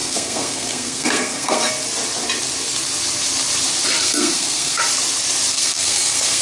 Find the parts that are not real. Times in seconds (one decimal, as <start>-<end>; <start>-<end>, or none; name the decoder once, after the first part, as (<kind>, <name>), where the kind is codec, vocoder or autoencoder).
0.0-1.7 (codec, SNAC); 4.0-4.8; 5.5-6.4